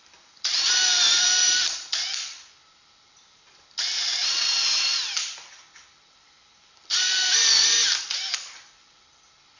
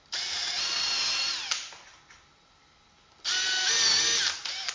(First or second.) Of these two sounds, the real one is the second